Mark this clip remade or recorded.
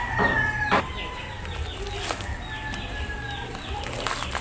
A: recorded